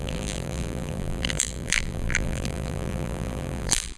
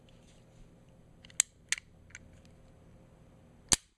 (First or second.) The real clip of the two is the second